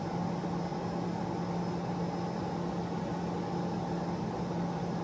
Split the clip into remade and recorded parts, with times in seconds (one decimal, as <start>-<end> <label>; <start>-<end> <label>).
0.0-5.0 recorded